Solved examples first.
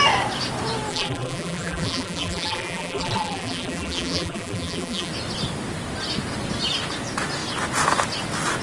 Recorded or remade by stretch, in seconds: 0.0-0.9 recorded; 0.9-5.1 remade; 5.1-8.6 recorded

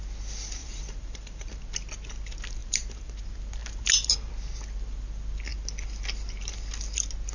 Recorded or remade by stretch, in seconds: 0.0-0.6 recorded; 0.6-1.6 remade; 1.6-2.6 recorded; 2.6-3.2 remade; 3.2-3.6 recorded; 3.6-4.3 remade; 4.3-7.3 recorded

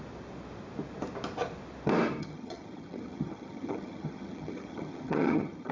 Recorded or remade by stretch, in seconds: 0.0-2.2 recorded; 2.2-5.7 remade

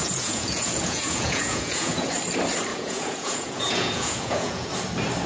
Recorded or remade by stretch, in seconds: 0.0-2.1 remade; 2.1-2.7 recorded; 2.7-4.7 remade; 4.7-5.3 recorded

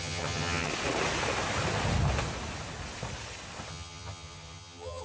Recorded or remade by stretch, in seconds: 0.0-0.7 remade; 0.7-3.7 recorded; 3.7-5.0 remade

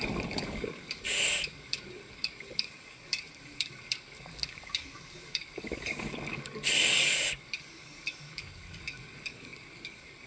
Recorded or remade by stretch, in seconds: 0.0-10.3 remade

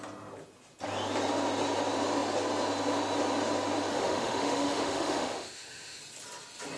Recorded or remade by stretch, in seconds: 0.0-3.9 recorded; 3.9-6.0 remade; 6.0-6.8 recorded